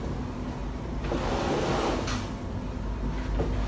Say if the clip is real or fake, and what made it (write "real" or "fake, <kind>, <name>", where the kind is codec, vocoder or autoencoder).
real